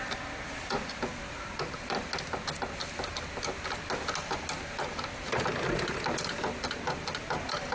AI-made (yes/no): no